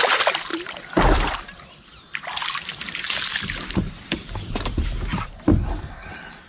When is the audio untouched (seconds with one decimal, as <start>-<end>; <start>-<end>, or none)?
none